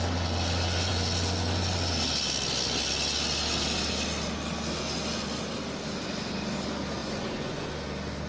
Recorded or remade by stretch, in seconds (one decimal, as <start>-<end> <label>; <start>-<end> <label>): 0.0-7.0 recorded; 7.0-7.7 remade; 7.7-8.3 recorded